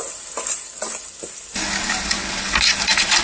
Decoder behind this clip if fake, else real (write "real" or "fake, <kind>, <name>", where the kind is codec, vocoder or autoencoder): real